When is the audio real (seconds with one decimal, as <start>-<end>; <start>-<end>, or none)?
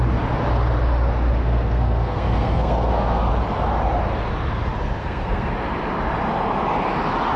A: 0.0-1.4; 3.3-5.0; 5.5-7.4